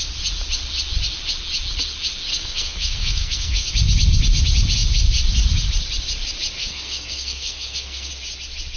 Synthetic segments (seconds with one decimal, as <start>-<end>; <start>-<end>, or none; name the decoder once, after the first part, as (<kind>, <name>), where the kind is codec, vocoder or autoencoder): 2.3-3.7 (codec, SNAC); 6.6-8.1